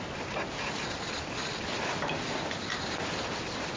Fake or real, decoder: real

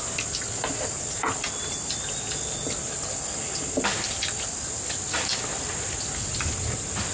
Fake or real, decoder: real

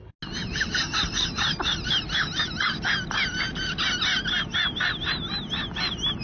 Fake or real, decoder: real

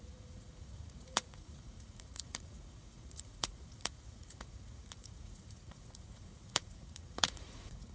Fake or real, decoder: fake, vocoder, Vocos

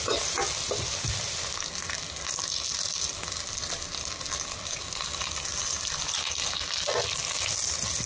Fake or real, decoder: real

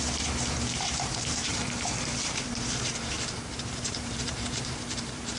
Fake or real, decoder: fake, vocoder, BigVGAN v2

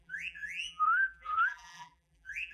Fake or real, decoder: fake, vocoder, BigVGAN v2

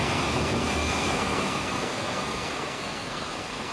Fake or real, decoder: fake, codec, SNAC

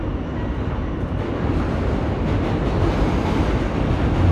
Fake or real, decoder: real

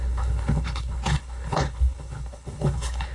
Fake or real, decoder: fake, codec, HILCodec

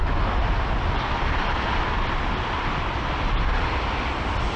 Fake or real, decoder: real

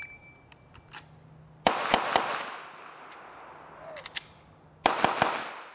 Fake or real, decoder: real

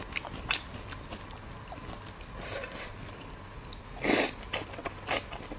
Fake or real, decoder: real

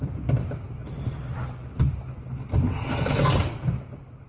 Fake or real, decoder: real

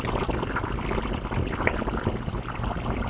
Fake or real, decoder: real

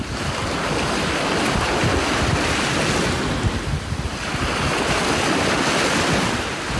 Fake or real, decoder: real